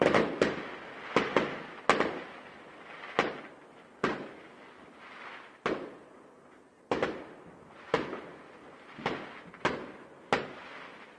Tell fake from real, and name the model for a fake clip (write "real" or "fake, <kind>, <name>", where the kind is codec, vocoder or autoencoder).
real